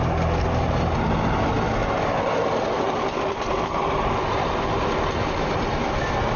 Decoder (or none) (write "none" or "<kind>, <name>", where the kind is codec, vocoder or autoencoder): none